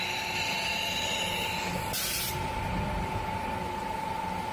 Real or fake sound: fake